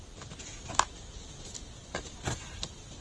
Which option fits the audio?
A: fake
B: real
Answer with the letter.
B